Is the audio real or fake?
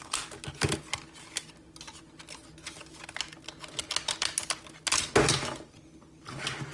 real